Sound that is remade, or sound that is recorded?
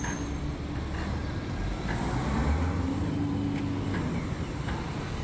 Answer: recorded